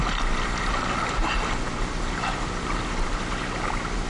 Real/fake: real